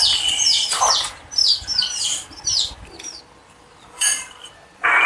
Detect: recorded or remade remade